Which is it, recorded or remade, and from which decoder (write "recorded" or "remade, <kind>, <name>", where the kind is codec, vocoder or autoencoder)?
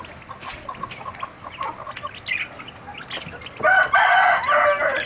recorded